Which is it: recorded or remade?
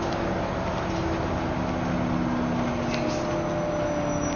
recorded